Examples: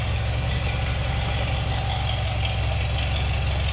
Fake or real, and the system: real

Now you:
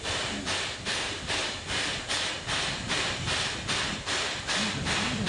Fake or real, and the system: fake, vocoder, BigVGAN v2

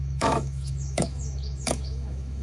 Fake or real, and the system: fake, autoencoder, DAC-VAE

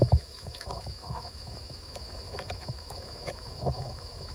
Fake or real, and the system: fake, autoencoder, DAC-VAE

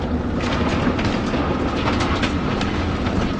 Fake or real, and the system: real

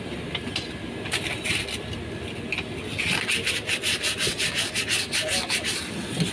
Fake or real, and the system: real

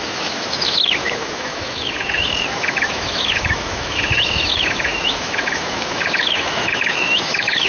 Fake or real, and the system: fake, autoencoder, DAC-VAE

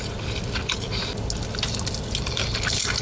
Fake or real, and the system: real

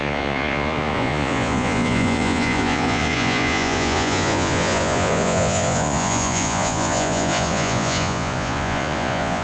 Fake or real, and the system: fake, vocoder, Vocos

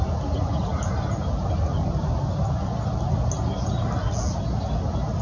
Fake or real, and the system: real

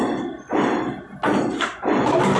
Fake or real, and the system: real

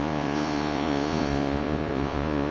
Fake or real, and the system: fake, vocoder, Vocos